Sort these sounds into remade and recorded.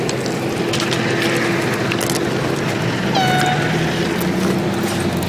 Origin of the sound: recorded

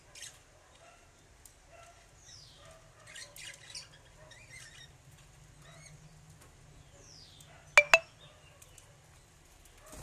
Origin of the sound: recorded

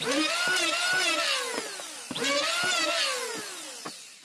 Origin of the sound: recorded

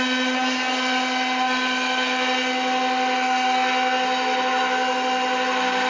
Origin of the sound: recorded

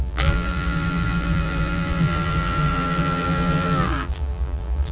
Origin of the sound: remade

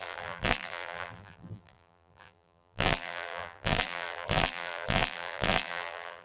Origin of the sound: remade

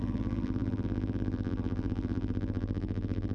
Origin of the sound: remade